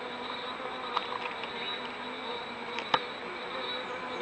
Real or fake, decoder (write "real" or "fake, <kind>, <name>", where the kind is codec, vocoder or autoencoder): real